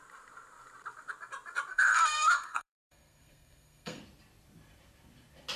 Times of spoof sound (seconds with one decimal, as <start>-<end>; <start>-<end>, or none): 1.7-4.0